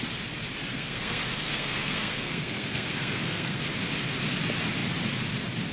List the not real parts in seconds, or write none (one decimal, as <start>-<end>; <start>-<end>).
0.7-3.6